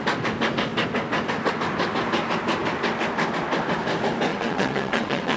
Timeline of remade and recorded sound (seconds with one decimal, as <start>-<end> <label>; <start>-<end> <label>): 0.0-4.3 recorded; 4.3-5.4 remade